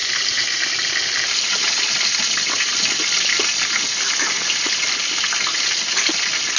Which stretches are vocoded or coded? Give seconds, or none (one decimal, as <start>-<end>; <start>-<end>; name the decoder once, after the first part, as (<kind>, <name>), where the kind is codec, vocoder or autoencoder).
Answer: none